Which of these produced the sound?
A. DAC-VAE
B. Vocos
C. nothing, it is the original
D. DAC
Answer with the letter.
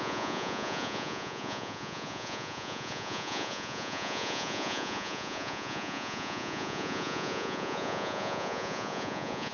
B